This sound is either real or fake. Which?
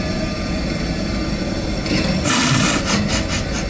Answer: real